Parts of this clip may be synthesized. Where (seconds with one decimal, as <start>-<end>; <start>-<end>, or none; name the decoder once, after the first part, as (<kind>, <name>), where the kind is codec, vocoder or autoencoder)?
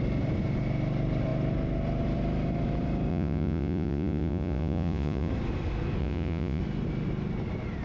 3.1-5.3 (vocoder, Vocos); 6.0-6.6